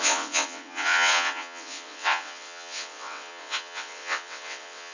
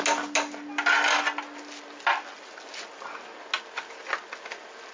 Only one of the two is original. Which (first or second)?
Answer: second